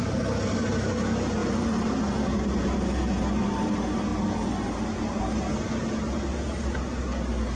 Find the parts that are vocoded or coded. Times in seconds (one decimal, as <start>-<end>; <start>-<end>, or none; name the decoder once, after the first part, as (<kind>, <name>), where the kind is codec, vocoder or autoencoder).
none